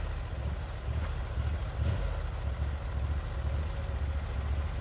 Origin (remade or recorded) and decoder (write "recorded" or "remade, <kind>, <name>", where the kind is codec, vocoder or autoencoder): recorded